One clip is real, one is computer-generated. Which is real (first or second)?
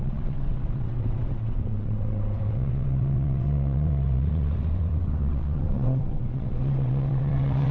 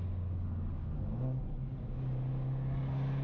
second